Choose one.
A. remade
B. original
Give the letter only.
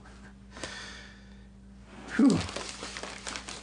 B